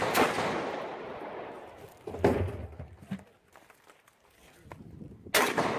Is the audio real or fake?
real